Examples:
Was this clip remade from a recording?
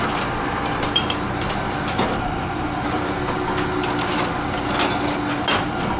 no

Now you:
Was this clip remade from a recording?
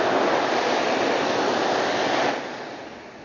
no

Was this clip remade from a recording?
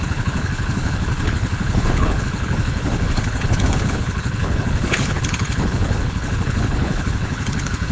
yes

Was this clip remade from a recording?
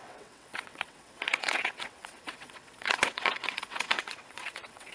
yes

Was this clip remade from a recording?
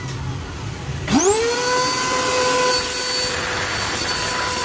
no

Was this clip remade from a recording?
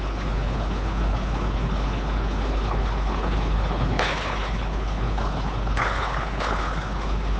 yes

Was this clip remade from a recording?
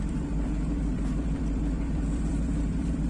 yes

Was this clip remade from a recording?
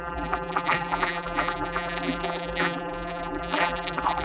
yes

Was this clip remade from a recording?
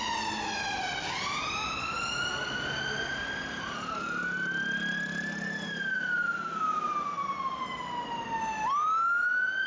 no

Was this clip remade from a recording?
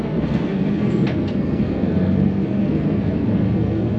yes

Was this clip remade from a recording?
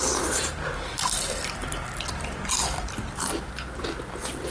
yes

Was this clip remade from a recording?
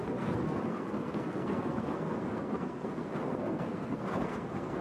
yes